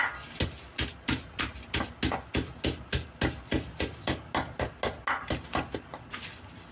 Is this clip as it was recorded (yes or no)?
yes